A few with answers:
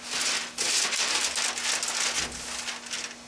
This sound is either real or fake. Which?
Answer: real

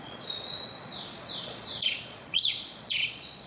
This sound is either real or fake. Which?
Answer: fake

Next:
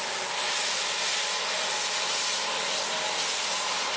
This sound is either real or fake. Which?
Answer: real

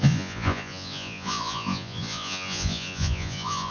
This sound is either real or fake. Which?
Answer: fake